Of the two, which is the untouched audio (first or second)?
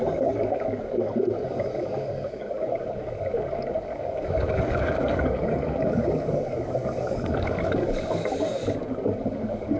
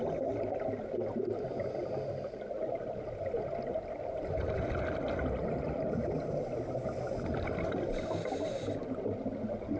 second